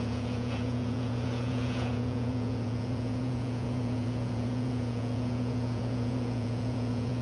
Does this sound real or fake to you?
fake